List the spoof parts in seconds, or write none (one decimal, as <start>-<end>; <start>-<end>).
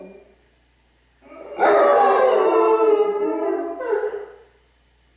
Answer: none